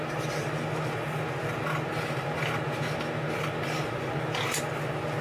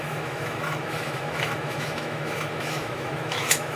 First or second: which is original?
first